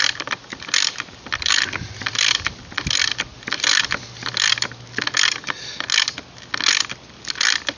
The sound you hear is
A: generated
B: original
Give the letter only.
B